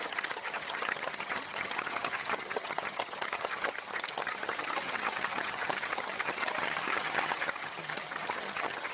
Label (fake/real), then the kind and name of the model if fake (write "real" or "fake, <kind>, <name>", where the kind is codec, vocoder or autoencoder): fake, vocoder, HiFi-GAN